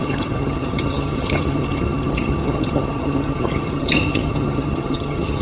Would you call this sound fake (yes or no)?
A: yes